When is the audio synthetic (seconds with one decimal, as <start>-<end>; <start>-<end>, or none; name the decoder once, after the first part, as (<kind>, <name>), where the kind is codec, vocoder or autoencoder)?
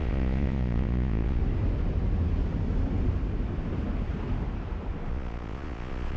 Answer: 0.0-1.4 (vocoder, Vocos); 5.1-6.2